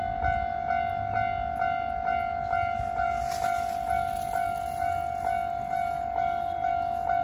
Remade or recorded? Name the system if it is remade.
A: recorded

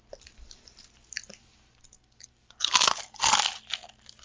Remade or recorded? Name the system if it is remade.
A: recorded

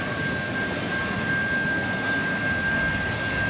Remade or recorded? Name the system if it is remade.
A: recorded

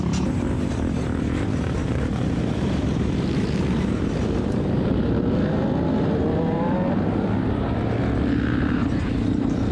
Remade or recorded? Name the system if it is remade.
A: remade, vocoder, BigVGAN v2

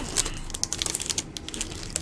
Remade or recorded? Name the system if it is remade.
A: recorded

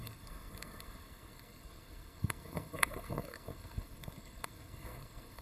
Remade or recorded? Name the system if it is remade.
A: remade, codec, SNAC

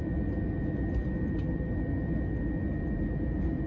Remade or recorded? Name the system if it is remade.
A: recorded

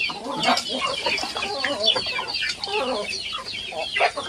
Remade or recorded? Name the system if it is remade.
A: recorded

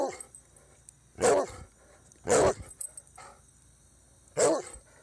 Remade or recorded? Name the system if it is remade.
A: recorded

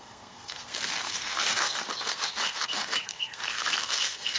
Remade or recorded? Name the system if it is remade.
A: remade, codec, SNAC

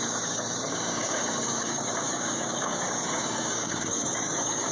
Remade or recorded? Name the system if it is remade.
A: remade, codec, DAC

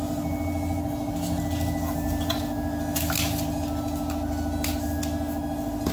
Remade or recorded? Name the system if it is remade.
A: recorded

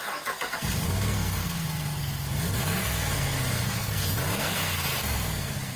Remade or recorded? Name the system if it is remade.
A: remade, codec, SNAC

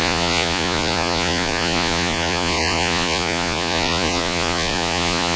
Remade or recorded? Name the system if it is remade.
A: remade, vocoder, Vocos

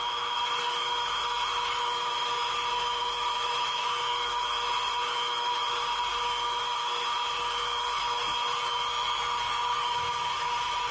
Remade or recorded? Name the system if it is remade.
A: remade, autoencoder, DAC-VAE